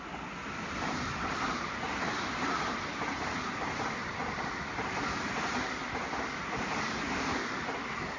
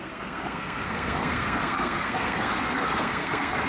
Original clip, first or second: first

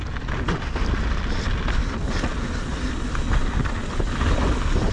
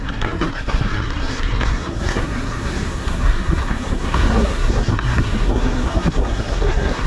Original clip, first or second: first